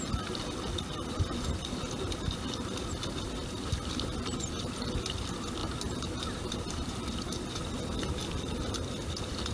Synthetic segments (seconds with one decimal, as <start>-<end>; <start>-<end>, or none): 5.6-7.1